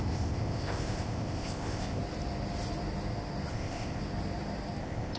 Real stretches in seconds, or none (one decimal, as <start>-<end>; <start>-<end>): 2.0-3.5; 4.0-4.8

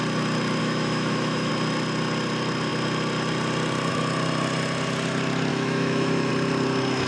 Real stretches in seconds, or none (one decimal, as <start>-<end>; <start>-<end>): 0.0-0.6; 1.5-5.5; 6.3-7.1

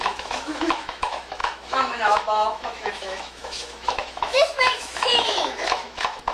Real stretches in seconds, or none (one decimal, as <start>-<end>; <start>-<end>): none

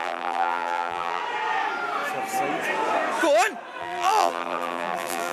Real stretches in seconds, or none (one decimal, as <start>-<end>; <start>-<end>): 1.2-3.8

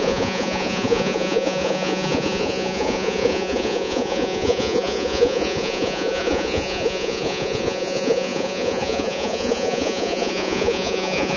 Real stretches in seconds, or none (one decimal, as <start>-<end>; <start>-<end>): none

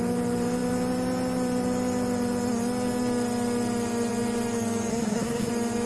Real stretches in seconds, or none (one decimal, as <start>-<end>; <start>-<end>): 0.0-4.9; 5.5-5.9